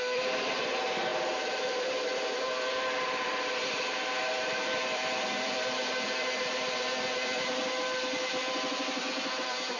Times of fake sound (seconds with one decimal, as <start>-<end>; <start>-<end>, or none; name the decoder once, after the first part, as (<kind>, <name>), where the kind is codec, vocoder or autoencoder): 0.0-9.8 (vocoder, BigVGAN v2)